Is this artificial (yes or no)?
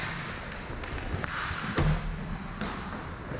no